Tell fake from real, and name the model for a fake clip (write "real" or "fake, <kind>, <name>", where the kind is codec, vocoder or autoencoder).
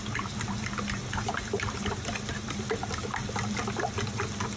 real